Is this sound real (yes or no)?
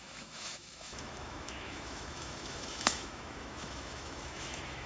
no